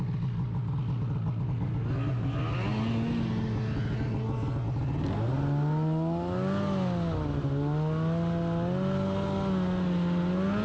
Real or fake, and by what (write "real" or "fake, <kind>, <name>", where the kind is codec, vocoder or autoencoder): real